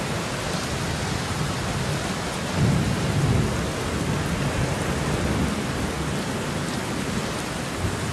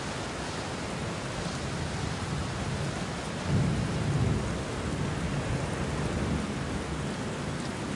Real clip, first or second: second